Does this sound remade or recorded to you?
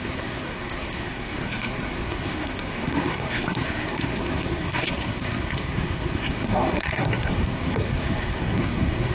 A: remade